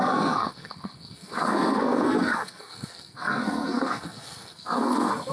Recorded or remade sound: remade